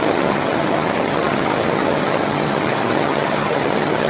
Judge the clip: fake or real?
fake